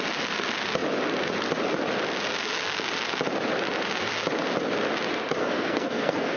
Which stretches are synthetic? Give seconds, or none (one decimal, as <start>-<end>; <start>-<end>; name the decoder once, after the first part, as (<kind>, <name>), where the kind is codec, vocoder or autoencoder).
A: 5.4-6.4 (codec, SNAC)